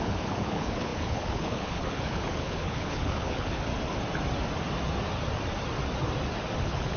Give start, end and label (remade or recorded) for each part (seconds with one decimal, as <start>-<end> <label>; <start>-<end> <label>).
0.0-3.7 remade; 3.7-6.6 recorded; 6.6-7.0 remade